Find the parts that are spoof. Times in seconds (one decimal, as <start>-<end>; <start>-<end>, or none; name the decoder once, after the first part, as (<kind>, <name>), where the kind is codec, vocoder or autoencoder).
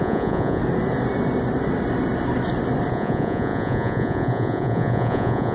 0.0-0.6 (vocoder, Vocos); 2.9-5.5